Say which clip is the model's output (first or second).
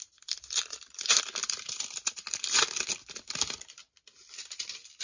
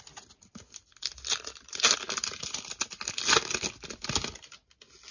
first